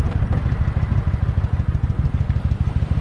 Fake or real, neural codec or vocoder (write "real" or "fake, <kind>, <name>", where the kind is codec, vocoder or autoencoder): real